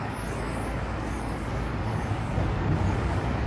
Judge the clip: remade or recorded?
remade